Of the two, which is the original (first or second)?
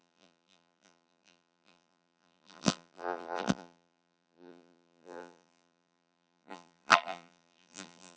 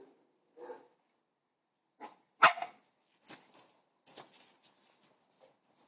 second